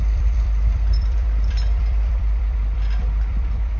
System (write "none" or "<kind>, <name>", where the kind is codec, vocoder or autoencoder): vocoder, BigVGAN v2